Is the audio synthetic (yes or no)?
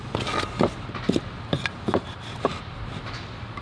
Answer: no